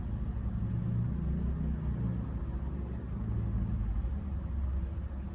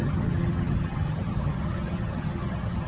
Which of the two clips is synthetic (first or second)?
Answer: second